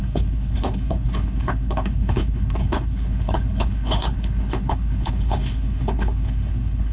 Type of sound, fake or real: fake